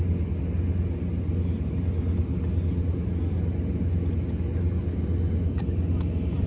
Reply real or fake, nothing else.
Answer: real